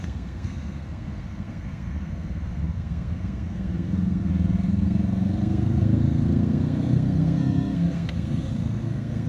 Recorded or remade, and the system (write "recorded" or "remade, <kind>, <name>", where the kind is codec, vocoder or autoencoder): remade, codec, SNAC